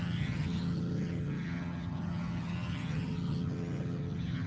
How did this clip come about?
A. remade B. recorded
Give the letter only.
A